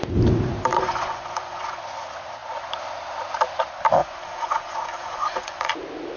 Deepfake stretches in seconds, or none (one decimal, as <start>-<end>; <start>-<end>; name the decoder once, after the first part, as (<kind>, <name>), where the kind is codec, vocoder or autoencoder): 0.7-1.8 (vocoder, Vocos); 4.0-5.7